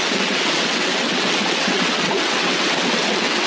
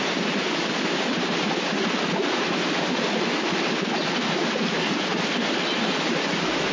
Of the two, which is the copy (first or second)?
first